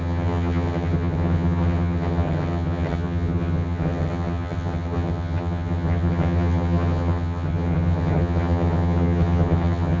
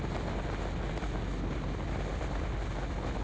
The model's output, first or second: first